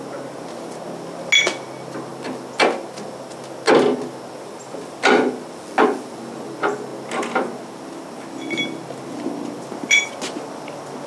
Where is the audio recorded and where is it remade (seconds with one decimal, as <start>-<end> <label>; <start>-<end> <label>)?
0.0-11.1 recorded